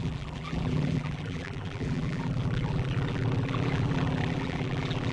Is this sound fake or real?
fake